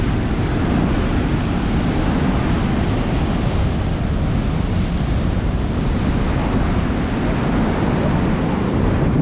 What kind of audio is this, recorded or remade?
recorded